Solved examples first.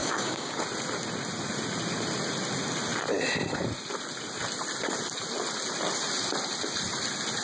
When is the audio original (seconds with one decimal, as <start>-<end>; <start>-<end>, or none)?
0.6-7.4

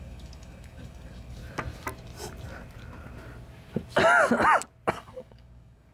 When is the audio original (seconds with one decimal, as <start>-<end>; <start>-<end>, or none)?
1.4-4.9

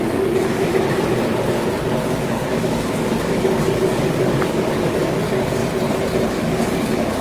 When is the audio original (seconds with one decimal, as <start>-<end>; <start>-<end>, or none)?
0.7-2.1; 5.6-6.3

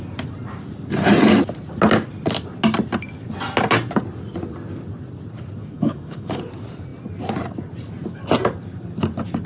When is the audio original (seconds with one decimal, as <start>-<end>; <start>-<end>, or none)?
0.0-5.6; 6.4-9.5

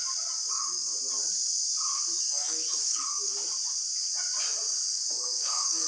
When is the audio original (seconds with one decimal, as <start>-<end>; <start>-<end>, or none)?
0.0-0.5; 0.9-2.2; 3.3-5.0

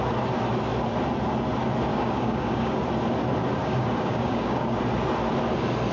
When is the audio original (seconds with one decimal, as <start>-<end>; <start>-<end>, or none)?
0.0-1.9; 2.8-3.6; 4.8-5.9

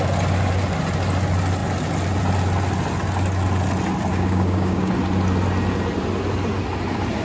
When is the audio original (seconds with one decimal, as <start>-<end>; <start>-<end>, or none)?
0.0-4.1; 4.9-7.2

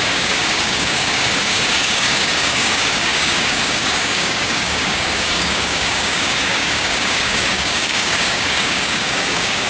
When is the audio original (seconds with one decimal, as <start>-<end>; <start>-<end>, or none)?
none